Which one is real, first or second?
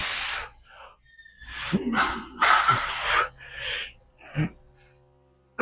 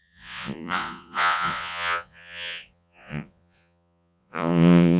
first